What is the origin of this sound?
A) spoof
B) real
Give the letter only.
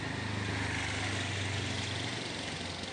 B